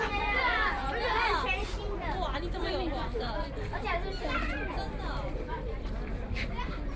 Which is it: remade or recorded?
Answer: remade